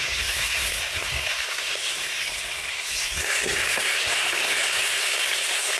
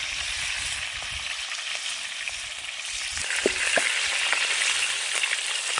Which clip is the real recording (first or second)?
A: second